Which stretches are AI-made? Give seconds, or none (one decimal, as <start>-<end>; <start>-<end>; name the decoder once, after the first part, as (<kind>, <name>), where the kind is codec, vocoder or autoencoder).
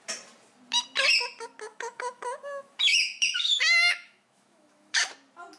1.7-5.1 (autoencoder, DAC-VAE)